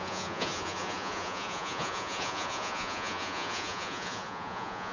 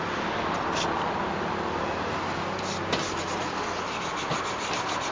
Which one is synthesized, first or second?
first